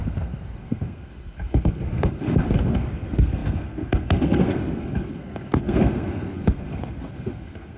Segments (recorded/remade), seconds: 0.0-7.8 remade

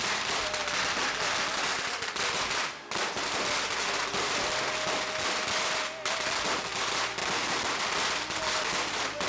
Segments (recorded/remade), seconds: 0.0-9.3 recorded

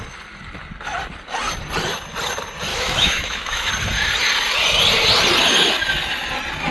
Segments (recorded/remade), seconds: 0.0-2.7 recorded; 2.7-3.7 remade; 3.7-6.7 recorded